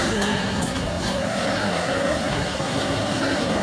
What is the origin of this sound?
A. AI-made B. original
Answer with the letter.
A